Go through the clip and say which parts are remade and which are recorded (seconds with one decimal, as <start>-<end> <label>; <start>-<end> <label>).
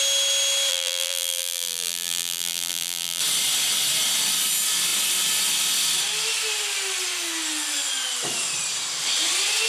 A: 0.0-0.7 recorded; 0.7-3.2 remade; 3.2-9.7 recorded